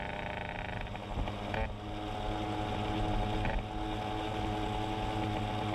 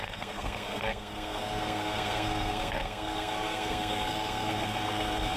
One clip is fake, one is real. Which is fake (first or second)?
second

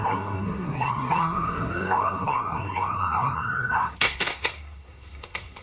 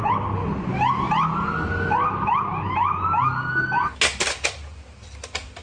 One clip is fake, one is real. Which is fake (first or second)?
first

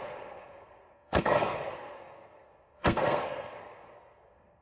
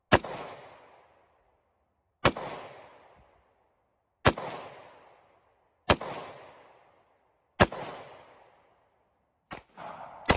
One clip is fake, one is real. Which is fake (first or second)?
first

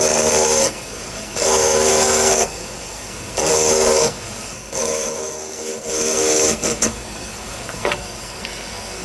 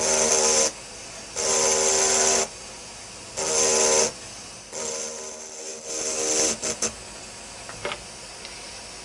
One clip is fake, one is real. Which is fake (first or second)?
first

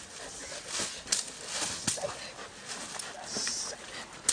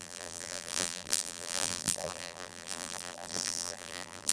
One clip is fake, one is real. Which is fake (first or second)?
second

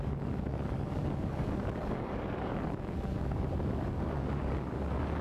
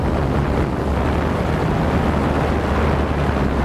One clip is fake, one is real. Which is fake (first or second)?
first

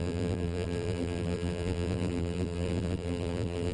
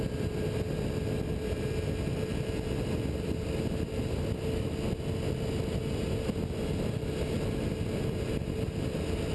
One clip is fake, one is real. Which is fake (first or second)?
first